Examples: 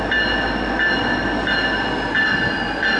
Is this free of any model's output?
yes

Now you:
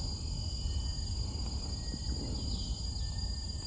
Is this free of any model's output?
yes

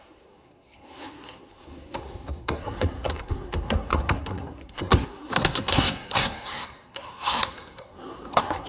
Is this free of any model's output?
no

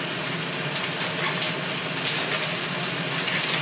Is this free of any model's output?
yes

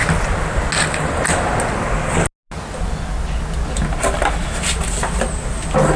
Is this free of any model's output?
yes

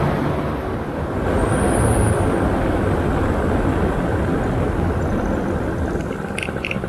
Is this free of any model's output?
yes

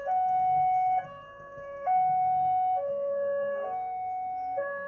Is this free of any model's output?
no